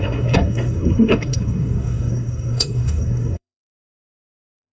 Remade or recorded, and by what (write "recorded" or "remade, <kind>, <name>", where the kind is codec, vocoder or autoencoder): remade, codec, SNAC